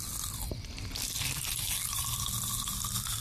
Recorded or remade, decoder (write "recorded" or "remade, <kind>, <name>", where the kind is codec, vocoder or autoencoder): remade, vocoder, BigVGAN v2